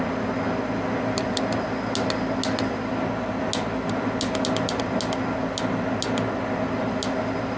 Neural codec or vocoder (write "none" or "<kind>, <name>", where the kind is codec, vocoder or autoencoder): none